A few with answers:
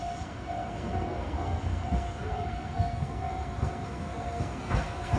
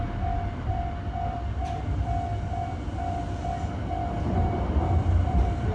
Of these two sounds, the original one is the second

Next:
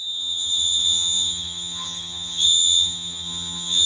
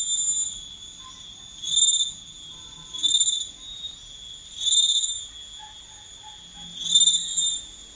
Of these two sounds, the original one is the second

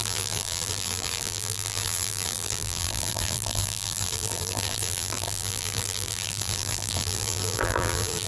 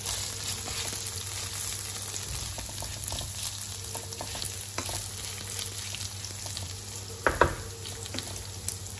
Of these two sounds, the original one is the second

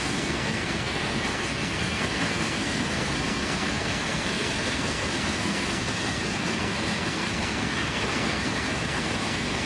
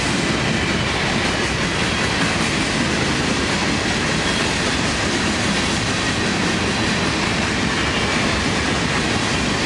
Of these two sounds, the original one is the second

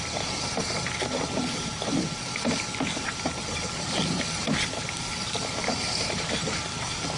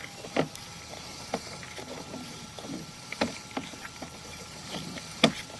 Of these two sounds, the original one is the second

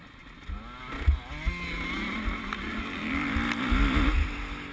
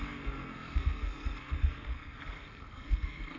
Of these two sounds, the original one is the first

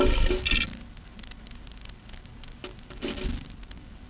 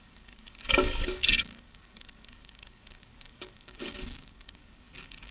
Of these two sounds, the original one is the first